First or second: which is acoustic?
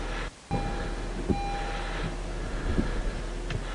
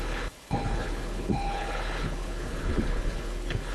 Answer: first